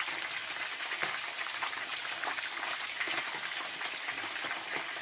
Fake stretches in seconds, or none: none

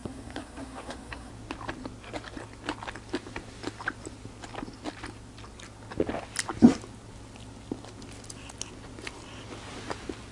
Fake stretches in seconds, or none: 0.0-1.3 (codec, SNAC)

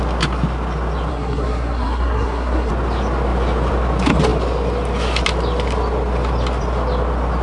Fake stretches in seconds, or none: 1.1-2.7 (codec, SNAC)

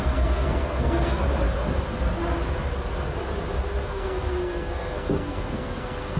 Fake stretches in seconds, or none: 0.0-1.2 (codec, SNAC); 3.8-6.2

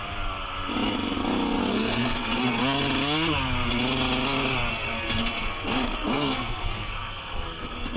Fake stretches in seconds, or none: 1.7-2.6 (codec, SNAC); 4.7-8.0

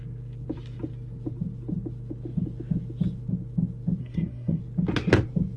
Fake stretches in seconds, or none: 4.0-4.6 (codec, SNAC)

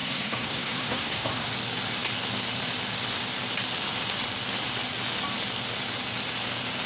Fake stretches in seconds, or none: 0.0-1.5 (codec, SNAC)